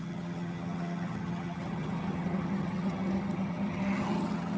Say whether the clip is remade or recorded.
remade